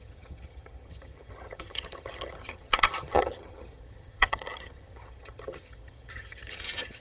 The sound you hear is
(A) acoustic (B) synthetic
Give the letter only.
B